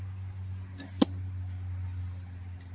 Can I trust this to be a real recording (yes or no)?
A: yes